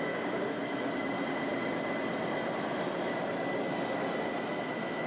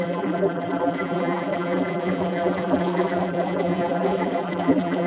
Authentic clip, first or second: first